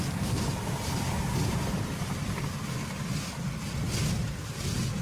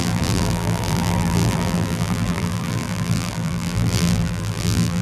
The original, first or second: first